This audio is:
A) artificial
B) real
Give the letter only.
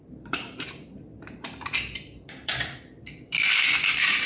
A